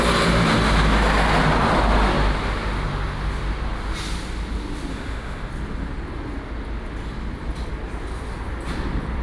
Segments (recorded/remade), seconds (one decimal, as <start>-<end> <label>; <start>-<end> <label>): 0.0-4.9 recorded; 4.9-5.5 remade; 5.5-9.2 recorded